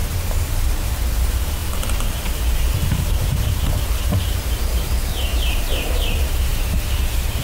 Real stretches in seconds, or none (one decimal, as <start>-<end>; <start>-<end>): 0.0-1.2